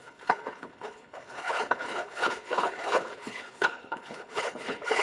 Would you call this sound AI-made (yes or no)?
yes